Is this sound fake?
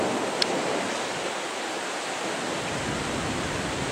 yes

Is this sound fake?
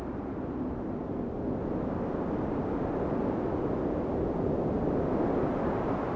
no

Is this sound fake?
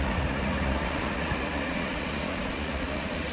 yes